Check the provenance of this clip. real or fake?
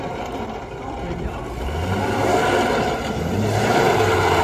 real